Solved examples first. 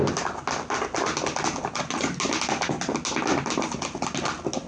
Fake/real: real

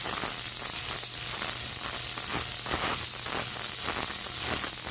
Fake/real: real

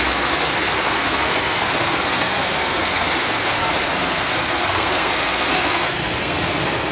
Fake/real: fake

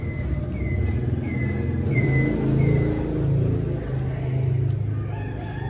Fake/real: real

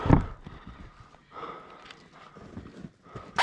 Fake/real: real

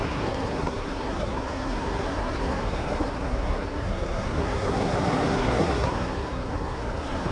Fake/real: fake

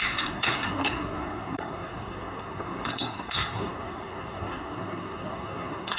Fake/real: fake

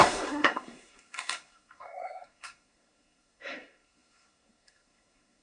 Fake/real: fake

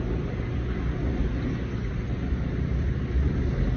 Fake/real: real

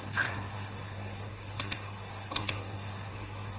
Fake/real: fake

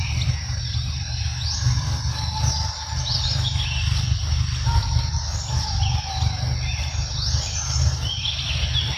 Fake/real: real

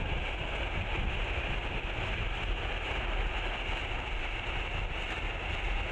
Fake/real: real